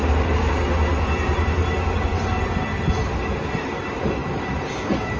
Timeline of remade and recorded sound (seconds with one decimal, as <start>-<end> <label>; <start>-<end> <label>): 0.0-0.6 remade; 0.6-5.2 recorded